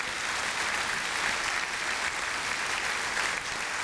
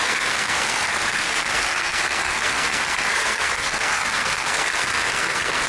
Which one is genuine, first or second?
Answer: first